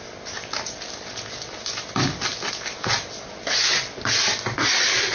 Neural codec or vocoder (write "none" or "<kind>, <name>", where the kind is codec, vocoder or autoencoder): none